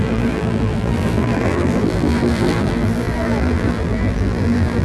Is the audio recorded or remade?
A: remade